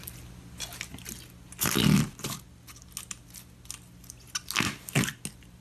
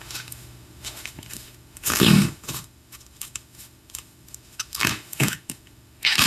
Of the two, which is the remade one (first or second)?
second